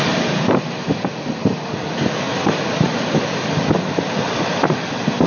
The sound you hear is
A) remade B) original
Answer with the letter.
B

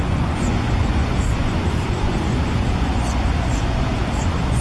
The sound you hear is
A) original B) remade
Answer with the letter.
B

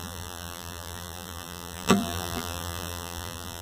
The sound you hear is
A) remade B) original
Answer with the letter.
A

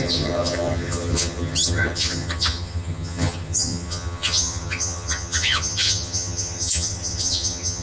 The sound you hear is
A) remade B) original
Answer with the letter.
A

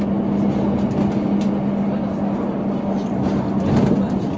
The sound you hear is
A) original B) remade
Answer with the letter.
A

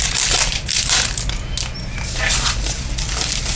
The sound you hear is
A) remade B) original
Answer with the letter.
B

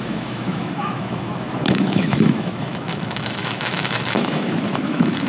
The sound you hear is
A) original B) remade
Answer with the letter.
B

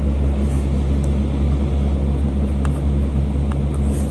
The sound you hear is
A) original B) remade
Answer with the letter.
A